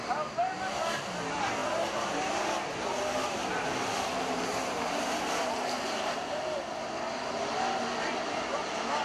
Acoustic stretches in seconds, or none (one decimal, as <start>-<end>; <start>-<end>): 0.0-1.6; 2.3-4.5; 6.6-9.0